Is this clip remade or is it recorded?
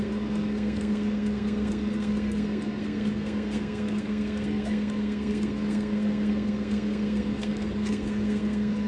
remade